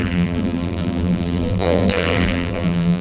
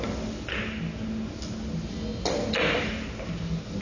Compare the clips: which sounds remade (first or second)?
first